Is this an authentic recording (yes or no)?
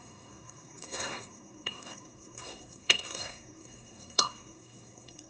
no